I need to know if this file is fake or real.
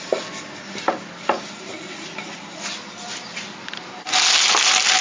real